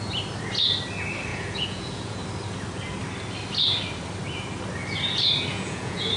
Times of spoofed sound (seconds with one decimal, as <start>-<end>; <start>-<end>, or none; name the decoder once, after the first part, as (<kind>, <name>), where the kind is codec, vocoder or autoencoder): 1.3-2.2 (vocoder, Vocos); 5.5-6.2